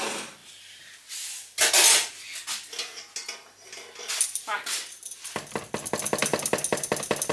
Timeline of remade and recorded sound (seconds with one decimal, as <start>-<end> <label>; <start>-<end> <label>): 0.0-7.3 recorded